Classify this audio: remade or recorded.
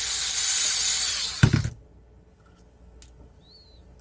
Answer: recorded